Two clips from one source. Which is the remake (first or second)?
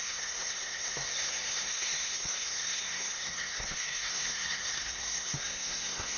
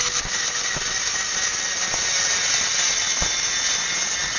first